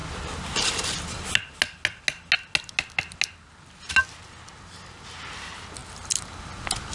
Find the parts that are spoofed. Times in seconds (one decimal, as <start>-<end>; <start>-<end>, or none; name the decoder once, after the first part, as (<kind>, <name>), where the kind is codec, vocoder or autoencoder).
none